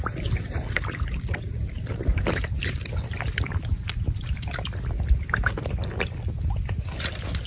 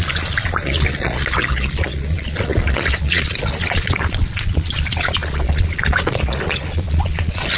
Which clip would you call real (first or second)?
first